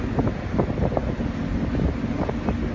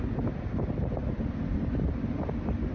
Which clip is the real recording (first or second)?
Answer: first